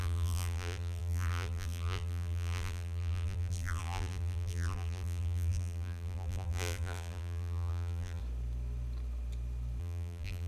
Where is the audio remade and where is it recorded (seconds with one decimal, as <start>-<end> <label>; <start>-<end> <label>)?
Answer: 0.0-8.2 remade; 8.2-9.8 recorded; 9.8-10.5 remade